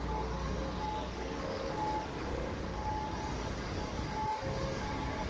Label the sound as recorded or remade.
remade